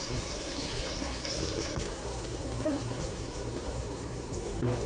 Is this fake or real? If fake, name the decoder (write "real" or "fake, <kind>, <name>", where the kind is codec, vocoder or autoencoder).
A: fake, codec, SNAC